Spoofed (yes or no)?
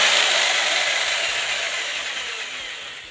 no